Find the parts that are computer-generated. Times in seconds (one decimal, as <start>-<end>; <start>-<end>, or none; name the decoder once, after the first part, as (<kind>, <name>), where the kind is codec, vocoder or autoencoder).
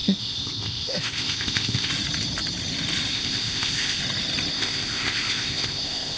0.0-1.9 (codec, ZipCodec); 3.1-4.0; 4.5-6.2